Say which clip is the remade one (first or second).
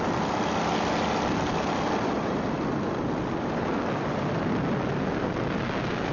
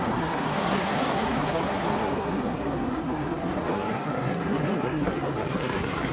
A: second